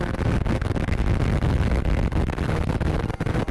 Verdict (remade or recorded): recorded